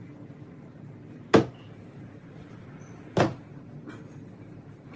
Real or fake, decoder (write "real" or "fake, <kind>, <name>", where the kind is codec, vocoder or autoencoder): real